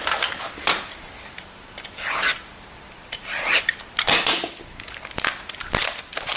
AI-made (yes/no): no